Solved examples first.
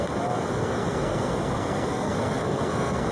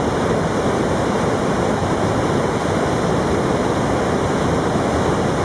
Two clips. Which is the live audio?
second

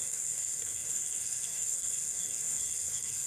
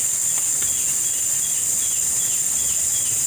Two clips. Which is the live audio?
second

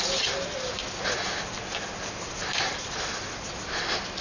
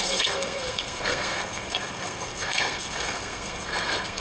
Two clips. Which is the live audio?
first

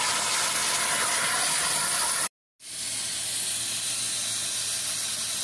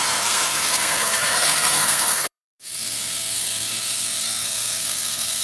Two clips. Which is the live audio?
first